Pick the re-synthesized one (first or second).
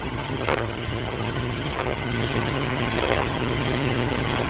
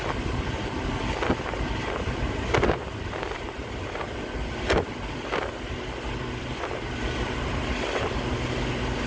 first